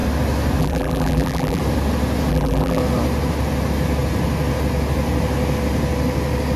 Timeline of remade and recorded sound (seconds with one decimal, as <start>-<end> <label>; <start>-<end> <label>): 0.0-0.6 recorded; 0.6-1.6 remade; 1.6-2.3 recorded; 2.3-2.8 remade; 2.8-6.6 recorded